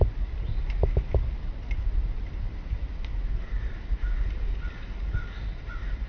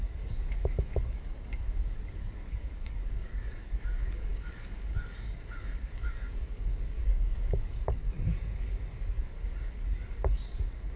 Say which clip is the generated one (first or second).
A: second